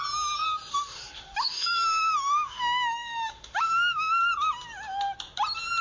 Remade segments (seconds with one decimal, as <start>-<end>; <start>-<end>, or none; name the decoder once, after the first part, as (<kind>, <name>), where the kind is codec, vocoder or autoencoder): 0.7-4.2 (autoencoder, DAC-VAE)